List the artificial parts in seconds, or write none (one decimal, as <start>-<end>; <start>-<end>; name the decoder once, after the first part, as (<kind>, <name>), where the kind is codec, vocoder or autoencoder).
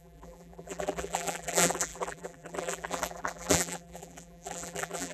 0.0-5.1 (vocoder, BigVGAN v2)